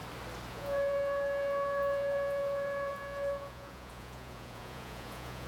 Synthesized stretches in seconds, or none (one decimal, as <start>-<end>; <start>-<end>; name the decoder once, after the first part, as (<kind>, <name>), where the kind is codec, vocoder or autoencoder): 0.5-5.5 (vocoder, Vocos)